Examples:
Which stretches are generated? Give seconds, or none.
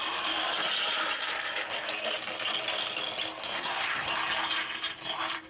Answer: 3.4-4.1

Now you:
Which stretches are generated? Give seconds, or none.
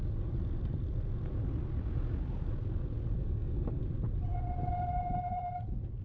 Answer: 3.2-3.8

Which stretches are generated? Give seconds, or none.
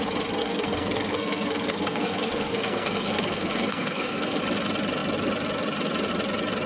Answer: 0.4-4.4